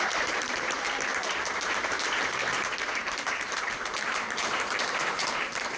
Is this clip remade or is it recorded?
remade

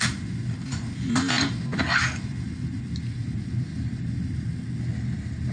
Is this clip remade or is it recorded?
recorded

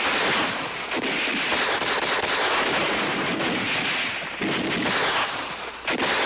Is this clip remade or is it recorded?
recorded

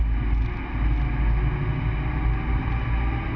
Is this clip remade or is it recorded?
recorded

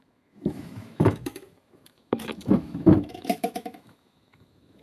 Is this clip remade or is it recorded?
remade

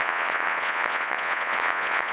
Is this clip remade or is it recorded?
remade